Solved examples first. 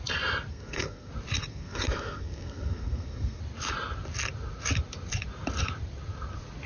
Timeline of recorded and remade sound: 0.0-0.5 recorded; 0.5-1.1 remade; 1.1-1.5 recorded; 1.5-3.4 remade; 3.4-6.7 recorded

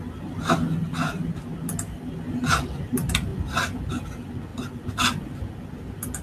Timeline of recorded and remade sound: 0.0-6.2 recorded

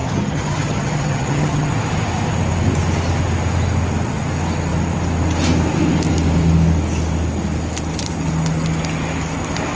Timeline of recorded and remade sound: 0.0-1.7 remade; 1.7-9.8 recorded

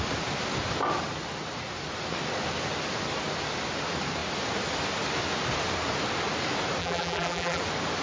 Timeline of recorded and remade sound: 0.0-6.8 recorded; 6.8-7.6 remade; 7.6-8.0 recorded

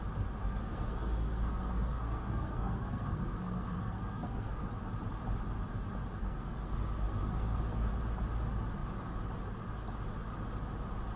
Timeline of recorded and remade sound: 0.0-0.4 recorded; 0.4-4.7 remade; 4.7-6.2 recorded; 6.2-7.9 remade; 7.9-11.2 recorded

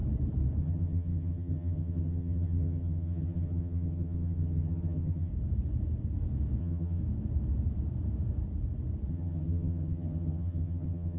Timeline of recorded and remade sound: 0.0-0.6 recorded; 0.6-5.3 remade; 5.3-6.6 recorded; 6.6-7.0 remade; 7.0-9.1 recorded; 9.1-11.2 remade

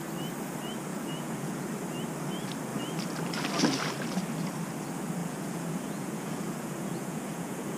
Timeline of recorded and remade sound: 0.0-0.9 recorded; 0.9-1.6 remade; 1.6-5.2 recorded; 5.2-7.8 remade

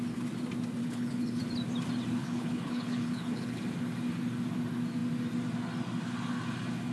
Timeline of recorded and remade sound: 0.0-0.8 recorded; 0.8-1.4 remade; 1.4-2.2 recorded; 2.2-3.6 remade; 3.6-6.9 recorded